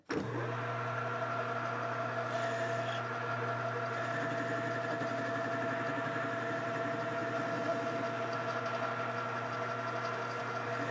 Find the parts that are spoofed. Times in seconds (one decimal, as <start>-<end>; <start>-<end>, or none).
none